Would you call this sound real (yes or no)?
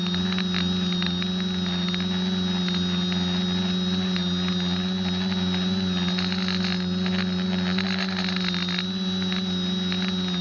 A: yes